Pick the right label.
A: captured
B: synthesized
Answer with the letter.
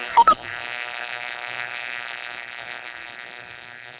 B